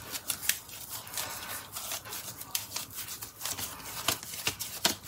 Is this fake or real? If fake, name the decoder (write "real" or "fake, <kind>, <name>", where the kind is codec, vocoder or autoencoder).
real